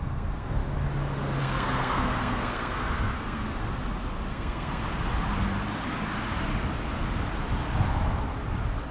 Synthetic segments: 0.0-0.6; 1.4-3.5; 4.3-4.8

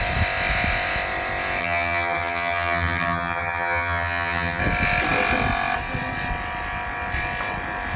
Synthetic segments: 1.6-4.6

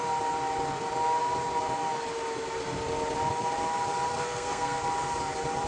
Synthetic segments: 4.1-4.8